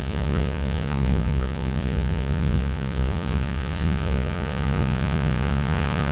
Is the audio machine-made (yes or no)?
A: yes